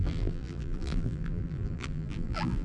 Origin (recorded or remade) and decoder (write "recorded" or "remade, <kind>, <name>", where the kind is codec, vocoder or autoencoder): remade, vocoder, BigVGAN v2